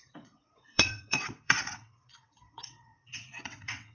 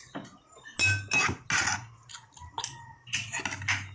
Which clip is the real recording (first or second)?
second